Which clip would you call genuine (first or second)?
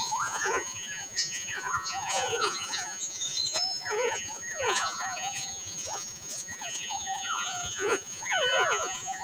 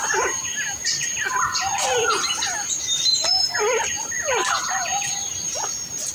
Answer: second